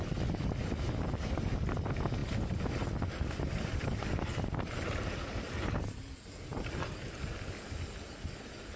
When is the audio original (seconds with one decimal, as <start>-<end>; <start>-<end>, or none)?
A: 0.0-8.8